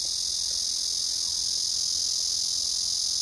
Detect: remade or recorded recorded